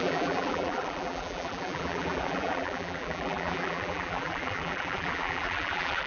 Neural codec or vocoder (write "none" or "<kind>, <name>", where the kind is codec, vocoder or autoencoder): vocoder, BigVGAN v2